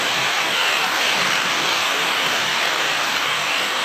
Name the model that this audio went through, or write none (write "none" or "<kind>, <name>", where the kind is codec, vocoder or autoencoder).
codec, DAC